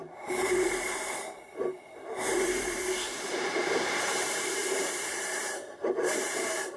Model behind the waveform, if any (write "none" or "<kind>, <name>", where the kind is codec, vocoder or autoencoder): vocoder, BigVGAN v2